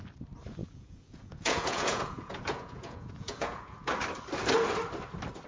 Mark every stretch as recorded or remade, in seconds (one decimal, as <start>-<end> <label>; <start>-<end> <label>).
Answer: 0.0-0.6 recorded; 0.6-3.9 remade; 3.9-5.5 recorded